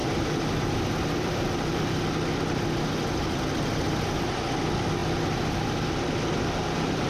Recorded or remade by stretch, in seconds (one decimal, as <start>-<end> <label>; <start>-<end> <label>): 0.0-1.4 remade; 1.4-7.1 recorded